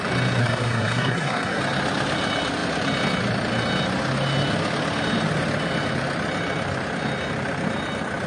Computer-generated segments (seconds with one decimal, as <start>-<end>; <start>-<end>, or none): 0.4-1.6